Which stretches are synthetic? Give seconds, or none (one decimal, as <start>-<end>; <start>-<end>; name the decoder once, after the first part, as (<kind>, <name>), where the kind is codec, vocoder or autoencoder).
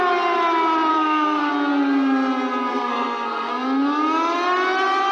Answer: 0.9-1.5 (codec, SNAC); 2.7-3.5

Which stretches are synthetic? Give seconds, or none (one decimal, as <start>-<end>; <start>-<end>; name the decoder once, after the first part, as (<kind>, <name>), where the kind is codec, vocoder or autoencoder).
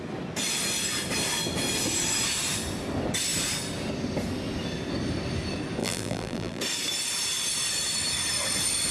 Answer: 5.8-6.6 (vocoder, BigVGAN v2)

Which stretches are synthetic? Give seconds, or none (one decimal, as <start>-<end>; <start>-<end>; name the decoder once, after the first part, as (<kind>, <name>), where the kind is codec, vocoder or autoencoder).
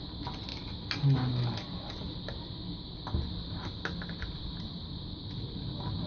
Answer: none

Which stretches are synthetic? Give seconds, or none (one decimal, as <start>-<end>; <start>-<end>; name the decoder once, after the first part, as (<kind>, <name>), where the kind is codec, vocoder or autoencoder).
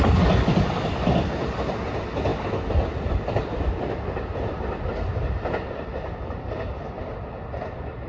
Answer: none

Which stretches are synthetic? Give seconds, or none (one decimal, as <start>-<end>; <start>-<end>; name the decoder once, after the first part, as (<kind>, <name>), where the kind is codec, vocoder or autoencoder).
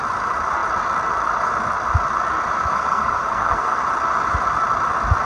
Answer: 2.7-3.8 (codec, SNAC)